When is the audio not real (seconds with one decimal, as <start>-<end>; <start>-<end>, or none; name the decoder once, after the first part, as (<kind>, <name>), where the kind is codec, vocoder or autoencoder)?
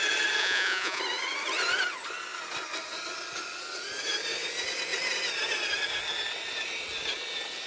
0.4-1.0 (vocoder, Vocos)